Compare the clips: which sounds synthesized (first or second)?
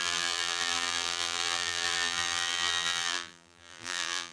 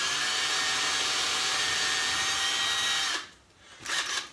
first